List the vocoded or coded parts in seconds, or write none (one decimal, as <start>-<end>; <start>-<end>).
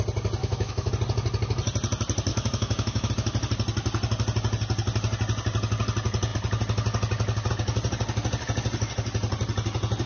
0.4-0.9; 2.3-3.1